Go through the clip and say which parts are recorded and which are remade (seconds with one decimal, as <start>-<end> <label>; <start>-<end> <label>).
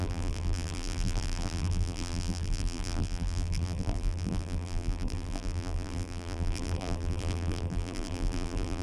0.0-8.8 remade